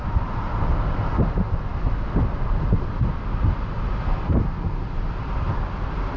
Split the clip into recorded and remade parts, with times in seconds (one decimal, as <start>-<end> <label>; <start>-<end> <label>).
0.0-6.2 recorded